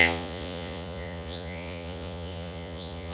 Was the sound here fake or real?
fake